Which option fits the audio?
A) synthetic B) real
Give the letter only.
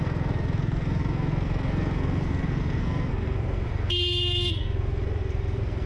A